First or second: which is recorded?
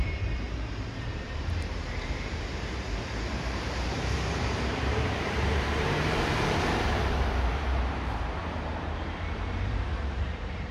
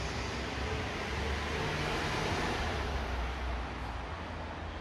second